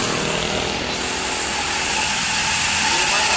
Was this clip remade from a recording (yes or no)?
no